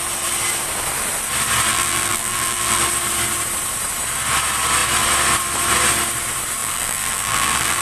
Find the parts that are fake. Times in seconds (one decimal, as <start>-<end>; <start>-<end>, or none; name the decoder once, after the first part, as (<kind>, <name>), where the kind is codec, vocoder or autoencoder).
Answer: 1.7-2.8 (vocoder, BigVGAN v2); 6.6-7.8